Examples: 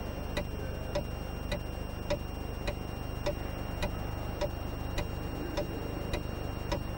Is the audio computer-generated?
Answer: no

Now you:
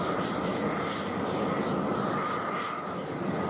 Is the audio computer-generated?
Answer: no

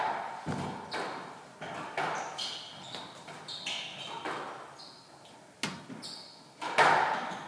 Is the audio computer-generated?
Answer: no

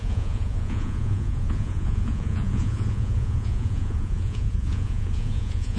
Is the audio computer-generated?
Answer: yes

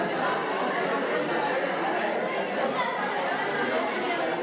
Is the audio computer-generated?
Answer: no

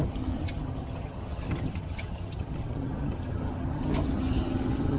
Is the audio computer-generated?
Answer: yes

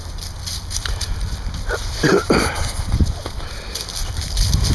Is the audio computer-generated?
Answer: no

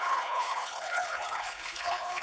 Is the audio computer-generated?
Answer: yes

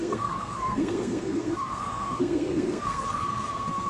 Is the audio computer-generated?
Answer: yes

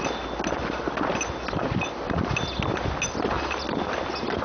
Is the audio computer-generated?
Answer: no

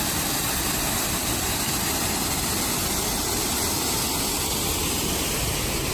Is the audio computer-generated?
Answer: no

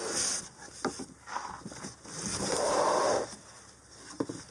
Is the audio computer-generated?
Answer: no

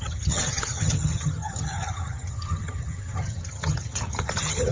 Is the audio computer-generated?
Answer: yes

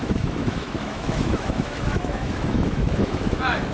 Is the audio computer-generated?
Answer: yes